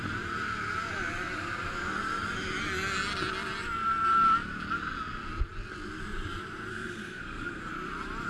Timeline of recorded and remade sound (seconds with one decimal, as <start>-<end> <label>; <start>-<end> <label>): 0.0-6.7 recorded; 6.7-7.7 remade; 7.7-8.3 recorded